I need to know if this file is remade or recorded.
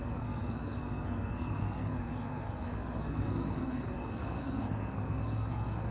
remade